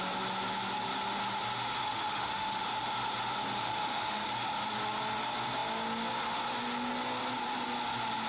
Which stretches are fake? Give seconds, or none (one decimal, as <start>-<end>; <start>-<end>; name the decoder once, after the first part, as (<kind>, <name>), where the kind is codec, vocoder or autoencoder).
1.8-2.6 (autoencoder, DAC-VAE); 3.6-4.3